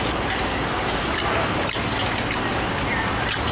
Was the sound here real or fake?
real